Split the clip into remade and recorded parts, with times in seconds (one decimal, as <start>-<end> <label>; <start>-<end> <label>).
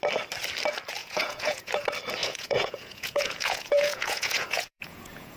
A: 0.0-1.0 recorded; 1.0-1.7 remade; 1.7-2.2 recorded; 2.2-5.4 remade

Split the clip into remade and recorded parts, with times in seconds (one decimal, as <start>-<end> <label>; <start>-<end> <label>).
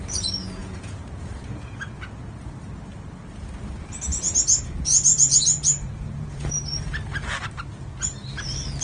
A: 0.0-0.6 recorded; 0.6-1.8 remade; 1.8-5.1 recorded; 5.1-6.5 remade; 6.5-8.8 recorded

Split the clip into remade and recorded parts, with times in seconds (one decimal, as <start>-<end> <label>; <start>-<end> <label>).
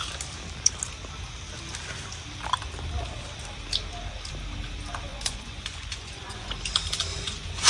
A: 0.0-5.1 recorded; 5.1-6.6 remade; 6.6-7.1 recorded; 7.1-7.7 remade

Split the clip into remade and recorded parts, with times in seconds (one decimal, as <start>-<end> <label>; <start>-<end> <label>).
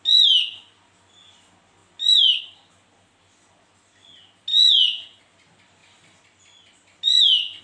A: 0.0-4.5 recorded; 4.5-5.2 remade; 5.2-7.6 recorded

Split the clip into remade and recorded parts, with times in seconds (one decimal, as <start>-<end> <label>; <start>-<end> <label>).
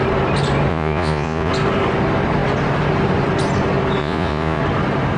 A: 0.0-0.7 recorded; 0.7-1.5 remade; 1.5-4.0 recorded; 4.0-4.6 remade; 4.6-5.2 recorded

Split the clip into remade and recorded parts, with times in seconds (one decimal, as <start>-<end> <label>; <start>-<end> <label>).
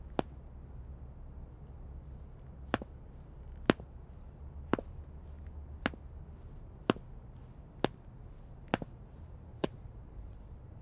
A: 0.0-9.5 recorded; 9.5-10.8 remade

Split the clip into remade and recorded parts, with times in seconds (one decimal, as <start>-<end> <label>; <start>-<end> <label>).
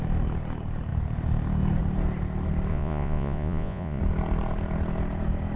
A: 0.0-2.7 recorded; 2.7-4.0 remade; 4.0-5.6 recorded